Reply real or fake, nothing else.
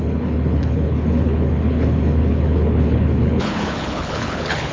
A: fake